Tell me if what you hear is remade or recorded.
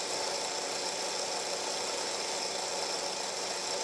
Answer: recorded